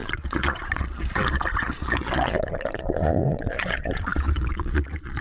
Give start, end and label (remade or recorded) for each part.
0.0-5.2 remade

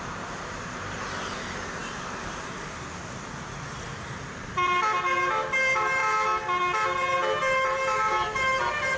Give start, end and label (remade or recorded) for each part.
0.0-6.0 remade; 6.0-7.4 recorded; 7.4-9.0 remade

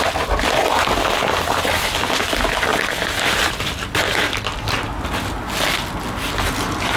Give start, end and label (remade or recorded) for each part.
0.0-7.0 recorded

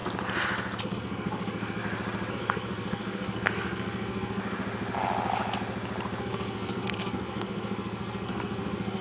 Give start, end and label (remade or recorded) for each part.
0.0-0.8 recorded; 0.8-1.8 remade; 1.8-2.3 recorded; 2.3-4.4 remade; 4.4-6.2 recorded; 6.2-9.0 remade

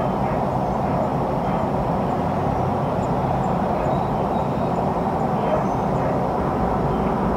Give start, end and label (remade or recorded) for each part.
0.0-3.2 recorded; 3.2-5.2 remade; 5.2-7.4 recorded

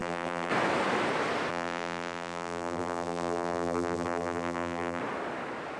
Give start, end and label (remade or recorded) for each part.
0.0-0.5 remade; 0.5-1.5 recorded; 1.5-5.0 remade; 5.0-5.8 recorded

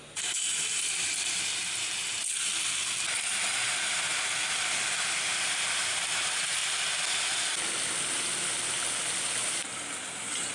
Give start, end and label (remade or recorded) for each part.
0.0-2.5 remade; 2.5-3.1 recorded; 3.1-6.6 remade; 6.6-9.3 recorded; 9.3-10.5 remade